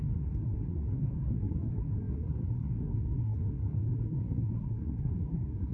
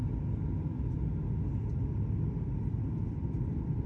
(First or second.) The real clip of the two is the second